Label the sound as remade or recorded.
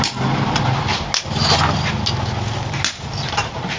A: recorded